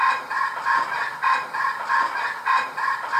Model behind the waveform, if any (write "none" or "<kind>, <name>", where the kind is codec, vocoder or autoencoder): none